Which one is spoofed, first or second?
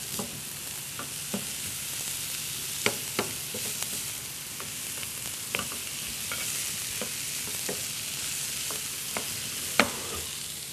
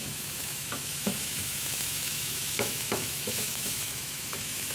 second